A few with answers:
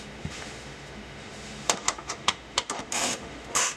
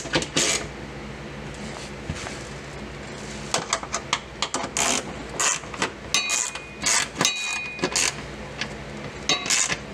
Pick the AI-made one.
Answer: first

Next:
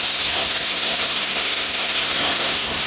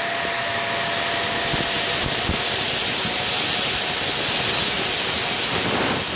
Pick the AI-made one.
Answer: first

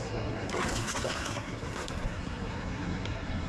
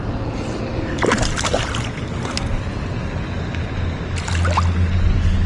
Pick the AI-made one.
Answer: first